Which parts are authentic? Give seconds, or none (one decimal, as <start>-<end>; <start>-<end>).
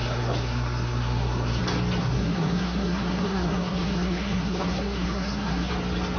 1.6-2.0; 5.7-6.2